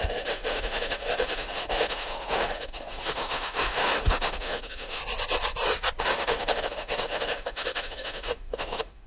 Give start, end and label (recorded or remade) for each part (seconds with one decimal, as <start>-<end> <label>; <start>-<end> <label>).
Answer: 0.0-5.0 remade; 5.0-6.0 recorded; 6.0-9.1 remade